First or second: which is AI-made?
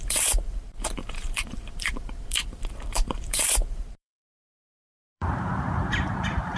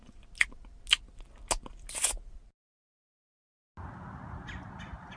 first